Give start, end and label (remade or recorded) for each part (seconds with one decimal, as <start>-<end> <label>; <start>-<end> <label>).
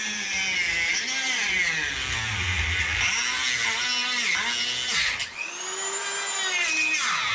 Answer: 0.0-7.3 recorded